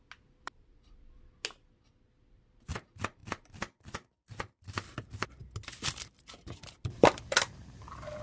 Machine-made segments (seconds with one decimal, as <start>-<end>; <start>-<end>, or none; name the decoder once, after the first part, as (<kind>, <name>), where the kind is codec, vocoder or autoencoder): none